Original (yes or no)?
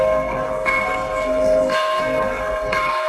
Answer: no